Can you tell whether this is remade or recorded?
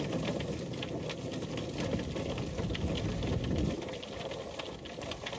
recorded